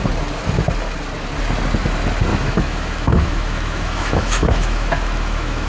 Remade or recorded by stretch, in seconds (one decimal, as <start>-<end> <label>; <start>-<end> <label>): 0.0-2.3 recorded; 2.3-5.7 remade